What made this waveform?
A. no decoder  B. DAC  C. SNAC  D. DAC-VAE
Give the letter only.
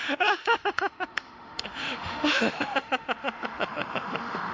D